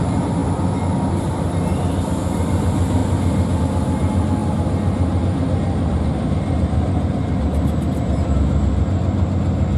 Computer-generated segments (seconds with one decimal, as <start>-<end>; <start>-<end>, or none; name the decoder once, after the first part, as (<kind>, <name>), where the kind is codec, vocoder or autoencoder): 5.9-8.2 (vocoder, BigVGAN v2)